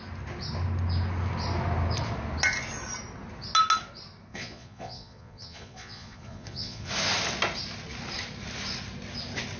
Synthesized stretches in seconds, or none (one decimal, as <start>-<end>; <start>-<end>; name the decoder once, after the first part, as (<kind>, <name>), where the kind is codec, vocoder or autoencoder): 4.3-6.9 (vocoder, Vocos)